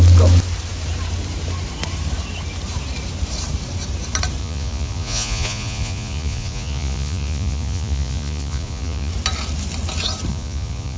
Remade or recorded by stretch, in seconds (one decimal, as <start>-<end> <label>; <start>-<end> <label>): 0.0-4.4 recorded; 4.4-9.1 remade; 9.1-10.3 recorded; 10.3-11.0 remade